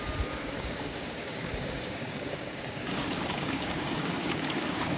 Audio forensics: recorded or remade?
remade